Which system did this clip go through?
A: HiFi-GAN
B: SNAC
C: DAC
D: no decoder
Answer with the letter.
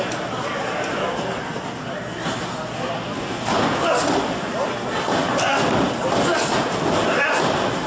D